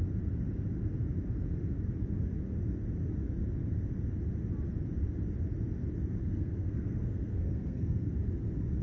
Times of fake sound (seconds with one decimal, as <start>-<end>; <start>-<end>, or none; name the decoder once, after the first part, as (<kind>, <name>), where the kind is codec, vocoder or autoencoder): 6.2-8.1 (codec, SNAC)